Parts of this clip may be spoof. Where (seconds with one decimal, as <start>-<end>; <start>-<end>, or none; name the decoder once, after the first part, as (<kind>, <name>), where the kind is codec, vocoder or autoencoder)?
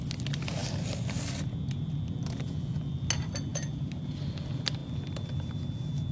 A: none